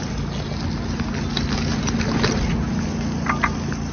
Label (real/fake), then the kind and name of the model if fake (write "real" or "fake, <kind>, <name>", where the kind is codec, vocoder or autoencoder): real